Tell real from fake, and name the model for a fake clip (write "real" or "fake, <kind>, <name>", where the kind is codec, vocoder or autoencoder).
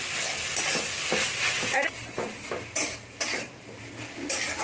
real